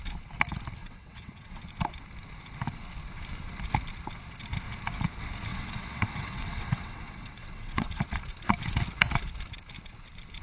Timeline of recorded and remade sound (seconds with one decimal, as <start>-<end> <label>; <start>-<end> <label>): 0.0-0.8 recorded; 0.8-1.6 remade; 1.6-5.5 recorded; 5.5-8.0 remade; 8.0-10.4 recorded

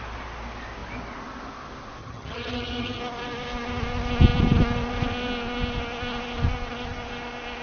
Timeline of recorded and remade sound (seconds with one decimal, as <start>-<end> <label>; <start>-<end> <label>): 0.0-2.0 recorded; 2.0-3.0 remade; 3.0-7.6 recorded

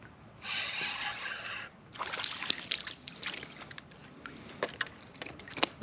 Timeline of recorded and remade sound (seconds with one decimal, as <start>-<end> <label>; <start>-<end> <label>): 0.0-5.8 recorded